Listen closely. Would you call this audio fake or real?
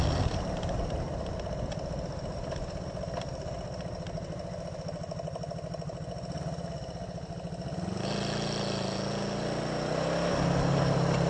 real